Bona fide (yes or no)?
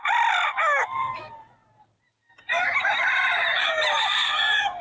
yes